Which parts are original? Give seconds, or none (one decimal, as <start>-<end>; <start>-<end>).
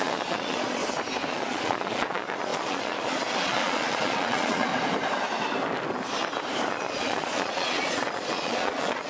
0.8-1.3; 4.7-6.7